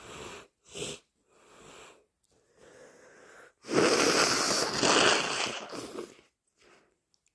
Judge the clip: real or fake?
real